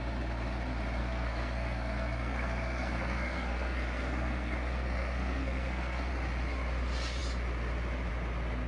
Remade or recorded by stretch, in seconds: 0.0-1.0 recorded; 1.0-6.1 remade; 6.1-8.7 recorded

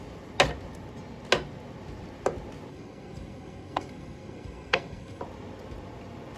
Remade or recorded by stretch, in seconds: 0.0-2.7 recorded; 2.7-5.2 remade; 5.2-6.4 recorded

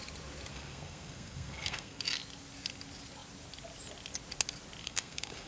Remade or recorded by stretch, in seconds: 0.0-0.5 recorded; 0.5-2.0 remade; 2.0-4.8 recorded; 4.8-5.5 remade

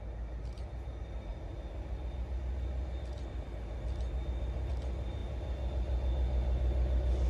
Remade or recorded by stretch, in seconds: 0.0-7.3 recorded